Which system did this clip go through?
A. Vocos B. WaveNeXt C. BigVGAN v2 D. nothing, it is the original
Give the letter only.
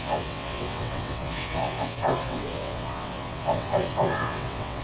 B